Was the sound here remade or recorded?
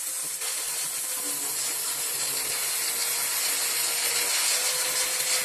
recorded